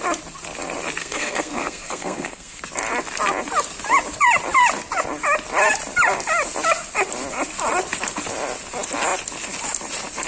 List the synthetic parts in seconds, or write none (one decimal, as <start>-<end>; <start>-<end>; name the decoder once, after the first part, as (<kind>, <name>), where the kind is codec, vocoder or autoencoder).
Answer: 1.0-2.6 (codec, SNAC)